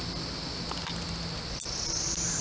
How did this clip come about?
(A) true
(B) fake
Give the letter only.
A